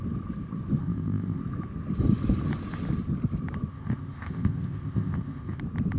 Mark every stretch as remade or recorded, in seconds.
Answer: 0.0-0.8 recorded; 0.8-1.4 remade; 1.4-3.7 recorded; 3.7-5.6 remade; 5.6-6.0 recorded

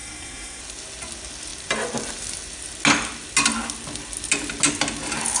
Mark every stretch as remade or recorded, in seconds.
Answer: 0.0-0.6 remade; 0.6-5.4 recorded

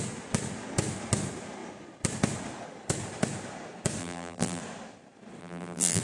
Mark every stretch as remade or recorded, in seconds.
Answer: 0.0-4.0 recorded; 4.0-4.6 remade; 4.6-5.4 recorded; 5.4-6.0 remade

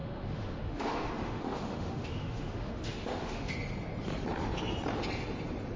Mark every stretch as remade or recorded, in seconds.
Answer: 0.0-3.5 remade; 3.5-5.8 recorded